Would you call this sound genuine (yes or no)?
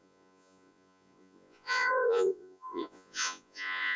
no